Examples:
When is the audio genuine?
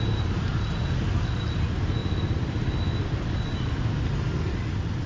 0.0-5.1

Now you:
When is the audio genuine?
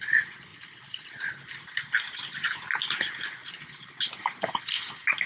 0.0-0.5; 1.3-3.4; 4.1-5.3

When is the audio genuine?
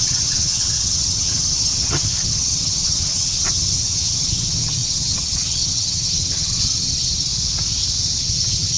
7.3-8.2